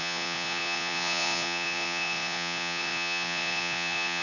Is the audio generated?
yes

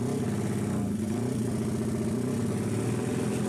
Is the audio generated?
no